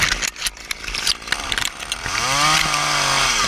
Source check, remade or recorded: recorded